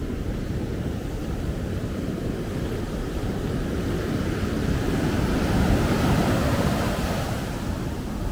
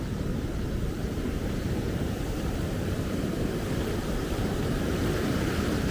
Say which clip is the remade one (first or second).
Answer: second